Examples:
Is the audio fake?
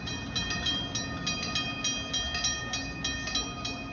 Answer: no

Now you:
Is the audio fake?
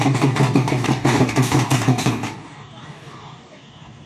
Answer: yes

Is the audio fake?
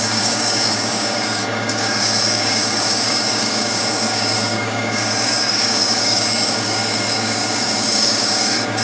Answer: yes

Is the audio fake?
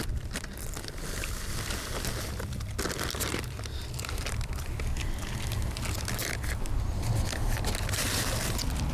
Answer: no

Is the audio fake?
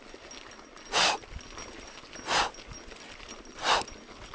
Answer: no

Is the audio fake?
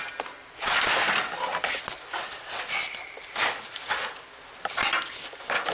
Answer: no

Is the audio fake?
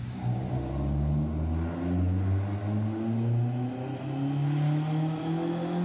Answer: no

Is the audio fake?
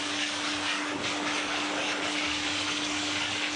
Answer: yes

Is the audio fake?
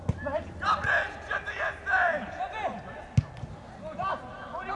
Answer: no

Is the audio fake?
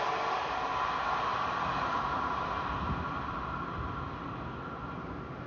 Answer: no